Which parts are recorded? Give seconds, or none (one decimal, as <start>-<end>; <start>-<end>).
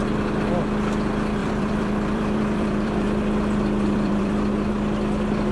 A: 0.0-1.4; 4.7-5.5